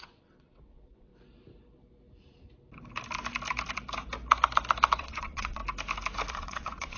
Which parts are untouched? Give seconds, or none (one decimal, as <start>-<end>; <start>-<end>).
1.1-5.0; 5.6-6.3